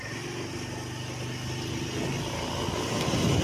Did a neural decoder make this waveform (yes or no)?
no